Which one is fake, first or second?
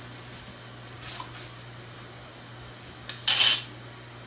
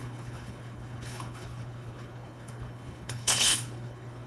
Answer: second